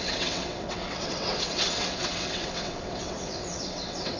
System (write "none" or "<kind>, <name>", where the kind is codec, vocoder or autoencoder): vocoder, WaveNeXt